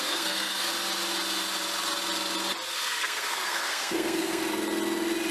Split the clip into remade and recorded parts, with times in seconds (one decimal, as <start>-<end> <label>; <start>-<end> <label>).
0.0-0.7 remade; 0.7-2.7 recorded; 2.7-4.4 remade; 4.4-5.3 recorded